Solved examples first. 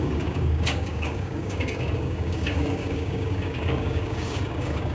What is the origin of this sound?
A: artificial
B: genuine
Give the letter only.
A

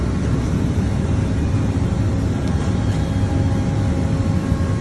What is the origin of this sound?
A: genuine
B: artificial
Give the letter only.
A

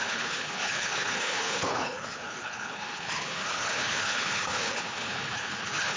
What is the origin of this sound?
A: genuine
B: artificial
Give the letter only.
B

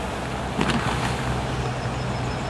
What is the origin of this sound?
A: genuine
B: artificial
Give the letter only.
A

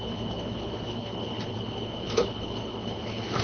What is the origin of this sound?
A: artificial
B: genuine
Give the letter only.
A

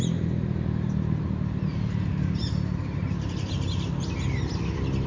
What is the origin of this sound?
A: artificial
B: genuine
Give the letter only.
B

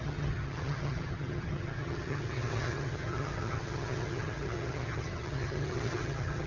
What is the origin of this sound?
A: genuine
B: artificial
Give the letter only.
B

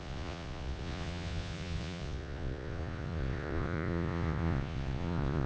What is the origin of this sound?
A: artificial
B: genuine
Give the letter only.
A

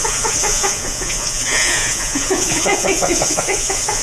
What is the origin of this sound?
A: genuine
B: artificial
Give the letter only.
B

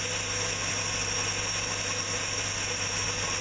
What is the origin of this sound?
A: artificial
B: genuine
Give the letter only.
B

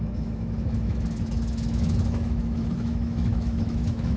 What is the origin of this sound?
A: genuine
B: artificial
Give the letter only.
B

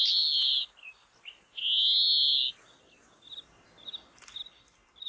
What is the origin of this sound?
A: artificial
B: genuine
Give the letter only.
B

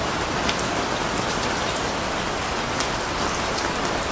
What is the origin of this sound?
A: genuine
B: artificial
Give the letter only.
A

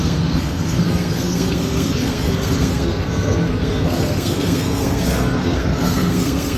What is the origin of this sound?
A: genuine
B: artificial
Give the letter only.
B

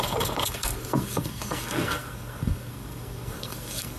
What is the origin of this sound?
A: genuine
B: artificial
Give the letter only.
B